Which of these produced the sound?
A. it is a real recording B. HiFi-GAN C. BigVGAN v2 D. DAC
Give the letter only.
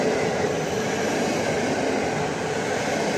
A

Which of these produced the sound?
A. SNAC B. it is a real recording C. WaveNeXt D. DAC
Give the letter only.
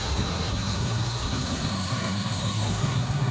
A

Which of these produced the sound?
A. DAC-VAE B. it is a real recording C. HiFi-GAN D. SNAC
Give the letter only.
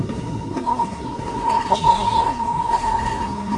D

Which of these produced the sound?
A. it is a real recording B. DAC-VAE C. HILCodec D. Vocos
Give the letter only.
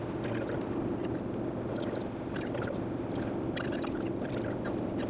A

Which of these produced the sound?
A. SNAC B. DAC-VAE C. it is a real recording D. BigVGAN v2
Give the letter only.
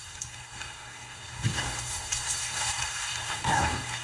A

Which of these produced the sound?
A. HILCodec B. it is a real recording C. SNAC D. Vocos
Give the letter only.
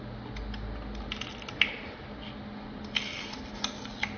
B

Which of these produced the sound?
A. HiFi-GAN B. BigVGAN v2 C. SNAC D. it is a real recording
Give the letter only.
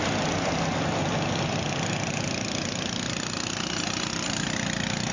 D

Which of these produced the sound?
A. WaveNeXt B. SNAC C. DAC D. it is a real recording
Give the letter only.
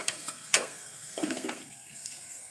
B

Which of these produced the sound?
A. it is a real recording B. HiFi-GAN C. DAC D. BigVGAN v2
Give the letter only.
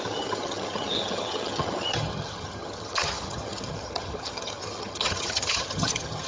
B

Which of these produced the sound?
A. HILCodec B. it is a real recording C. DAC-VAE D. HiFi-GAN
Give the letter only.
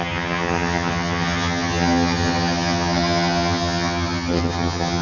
D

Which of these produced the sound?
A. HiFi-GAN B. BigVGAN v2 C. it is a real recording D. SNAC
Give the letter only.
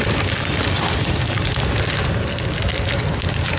C